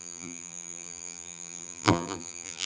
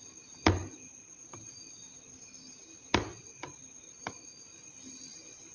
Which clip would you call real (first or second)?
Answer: second